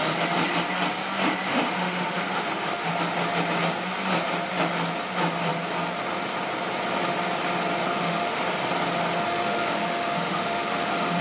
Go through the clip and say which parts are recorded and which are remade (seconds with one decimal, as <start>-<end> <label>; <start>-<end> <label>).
0.0-1.5 recorded; 1.5-2.9 remade; 2.9-7.9 recorded; 7.9-8.4 remade; 8.4-9.2 recorded; 9.2-11.2 remade